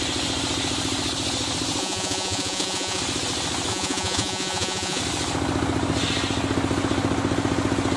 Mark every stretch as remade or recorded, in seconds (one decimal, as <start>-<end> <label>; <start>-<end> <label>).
0.0-1.8 recorded; 1.8-3.0 remade; 3.0-3.7 recorded; 3.7-5.0 remade; 5.0-8.0 recorded